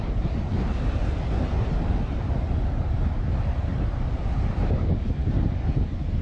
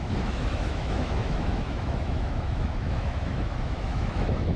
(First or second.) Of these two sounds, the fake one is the second